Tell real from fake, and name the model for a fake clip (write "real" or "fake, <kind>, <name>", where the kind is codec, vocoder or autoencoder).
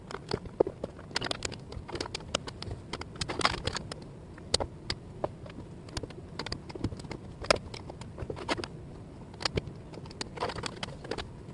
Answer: real